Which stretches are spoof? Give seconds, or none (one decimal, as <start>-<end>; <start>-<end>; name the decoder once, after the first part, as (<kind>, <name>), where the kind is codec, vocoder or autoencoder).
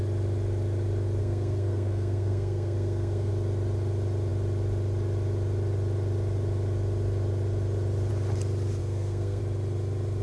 1.2-3.3 (codec, SNAC); 8.8-9.4